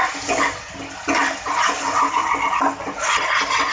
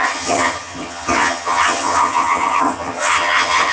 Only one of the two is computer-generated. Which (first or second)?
second